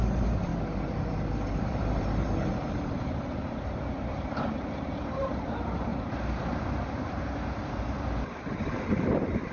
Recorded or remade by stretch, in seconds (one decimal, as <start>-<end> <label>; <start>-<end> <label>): 0.0-0.5 remade; 0.5-1.3 recorded; 1.3-9.5 remade